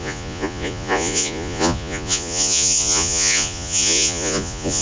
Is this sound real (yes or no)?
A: no